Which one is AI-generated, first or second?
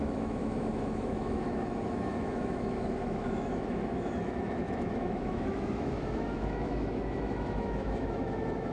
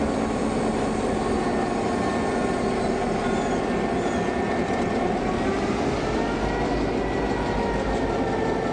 first